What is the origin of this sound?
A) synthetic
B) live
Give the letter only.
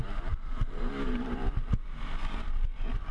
A